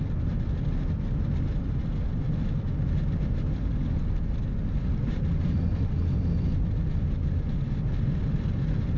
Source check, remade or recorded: recorded